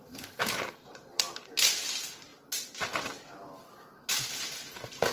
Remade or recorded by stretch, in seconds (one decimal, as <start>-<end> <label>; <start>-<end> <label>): 0.0-2.3 remade; 2.3-4.6 recorded; 4.6-5.1 remade